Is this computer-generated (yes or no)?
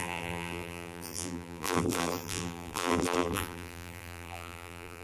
yes